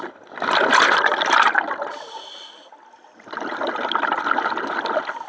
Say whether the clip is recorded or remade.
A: recorded